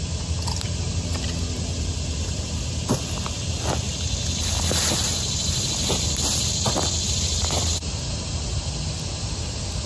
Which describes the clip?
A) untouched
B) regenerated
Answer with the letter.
A